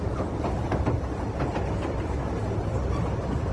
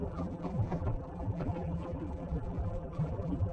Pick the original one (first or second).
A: first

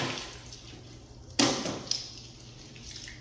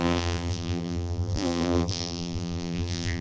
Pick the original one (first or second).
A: first